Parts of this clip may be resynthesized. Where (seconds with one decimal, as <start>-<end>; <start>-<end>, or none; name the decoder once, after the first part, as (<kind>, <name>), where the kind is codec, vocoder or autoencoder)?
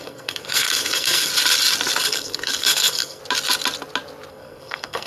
0.0-1.3 (codec, SNAC); 2.0-3.2; 4.3-5.1